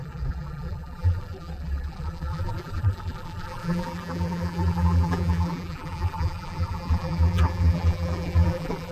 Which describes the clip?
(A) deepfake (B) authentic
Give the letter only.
A